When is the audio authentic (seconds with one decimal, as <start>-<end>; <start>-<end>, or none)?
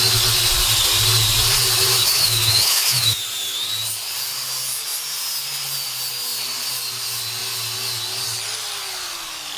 0.0-2.0; 3.2-9.6